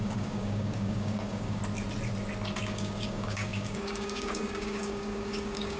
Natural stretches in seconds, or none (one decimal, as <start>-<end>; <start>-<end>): 1.6-2.6